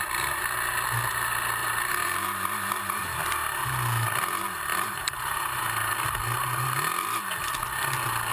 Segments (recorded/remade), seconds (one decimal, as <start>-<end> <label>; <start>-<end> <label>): 0.0-1.6 recorded; 1.6-3.0 remade; 3.0-4.7 recorded; 4.7-5.6 remade; 5.6-8.3 recorded

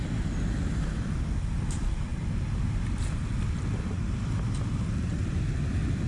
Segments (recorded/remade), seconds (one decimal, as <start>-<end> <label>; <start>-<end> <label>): 0.0-5.1 recorded; 5.1-6.1 remade

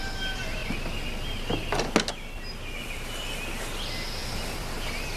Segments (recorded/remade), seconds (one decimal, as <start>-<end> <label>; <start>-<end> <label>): 0.0-5.2 recorded

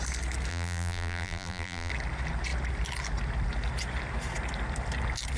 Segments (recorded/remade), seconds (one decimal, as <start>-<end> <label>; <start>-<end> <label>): 0.0-0.5 recorded; 0.5-1.9 remade; 1.9-5.4 recorded

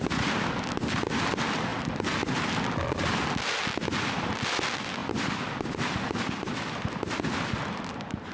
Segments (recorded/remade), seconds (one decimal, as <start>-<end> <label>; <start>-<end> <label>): 0.0-5.0 recorded; 5.0-6.6 remade; 6.6-8.3 recorded